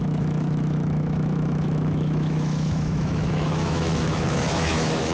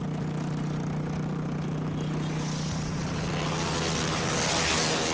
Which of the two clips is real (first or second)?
second